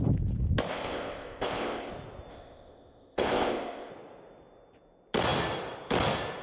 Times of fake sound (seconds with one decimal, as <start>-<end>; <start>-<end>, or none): 0.7-1.9; 2.3-3.9